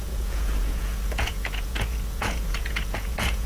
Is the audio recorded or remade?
remade